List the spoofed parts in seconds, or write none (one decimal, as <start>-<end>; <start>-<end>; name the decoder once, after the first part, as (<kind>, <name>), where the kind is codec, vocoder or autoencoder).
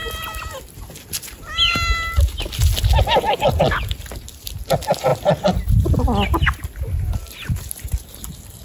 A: none